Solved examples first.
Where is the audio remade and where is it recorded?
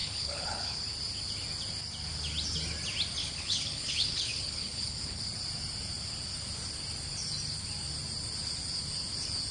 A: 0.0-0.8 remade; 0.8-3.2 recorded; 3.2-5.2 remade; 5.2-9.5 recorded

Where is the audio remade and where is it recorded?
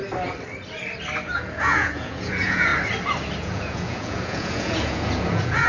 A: 0.0-1.3 recorded; 1.3-2.7 remade; 2.7-3.4 recorded; 3.4-5.7 remade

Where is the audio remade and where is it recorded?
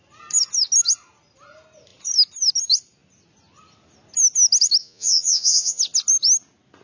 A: 0.0-4.8 recorded; 4.8-5.8 remade; 5.8-6.8 recorded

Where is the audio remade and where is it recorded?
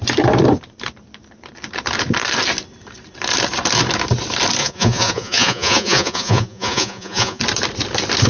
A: 0.0-4.6 recorded; 4.6-7.4 remade; 7.4-8.3 recorded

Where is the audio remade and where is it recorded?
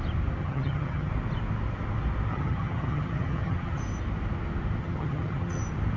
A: 0.0-0.4 recorded; 0.4-1.1 remade; 1.1-2.3 recorded; 2.3-3.8 remade; 3.8-4.8 recorded; 4.8-5.6 remade; 5.6-6.0 recorded